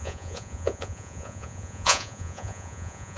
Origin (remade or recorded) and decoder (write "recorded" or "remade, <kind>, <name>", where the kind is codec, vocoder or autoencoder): remade, vocoder, Vocos